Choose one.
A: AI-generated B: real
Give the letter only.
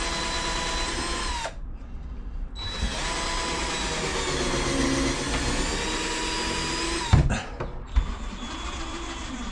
B